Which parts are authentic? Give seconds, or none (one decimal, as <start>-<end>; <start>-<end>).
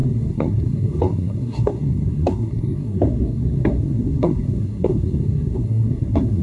none